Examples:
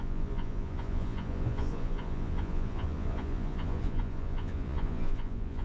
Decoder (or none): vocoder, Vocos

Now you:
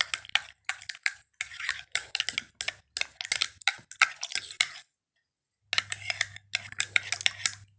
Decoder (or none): none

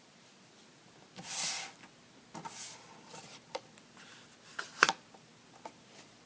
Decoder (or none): none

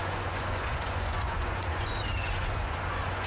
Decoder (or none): vocoder, Vocos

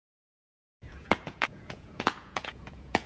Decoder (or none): vocoder, Vocos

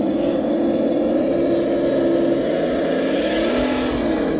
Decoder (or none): none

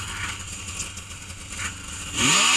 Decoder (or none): none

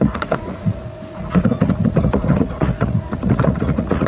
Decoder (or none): vocoder, Vocos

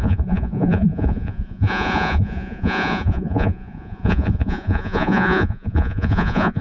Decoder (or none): vocoder, Vocos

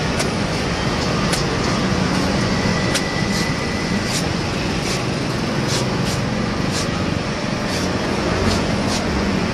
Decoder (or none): vocoder, Vocos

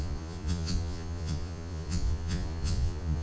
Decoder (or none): vocoder, Vocos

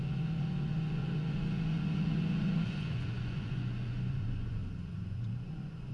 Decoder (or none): vocoder, Vocos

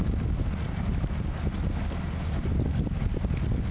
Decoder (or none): none